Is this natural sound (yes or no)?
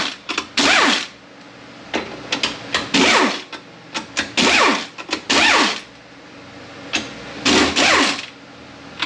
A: yes